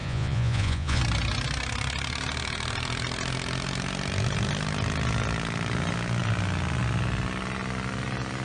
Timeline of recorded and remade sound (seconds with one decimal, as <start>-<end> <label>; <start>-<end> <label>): 0.0-1.0 remade; 1.0-8.4 recorded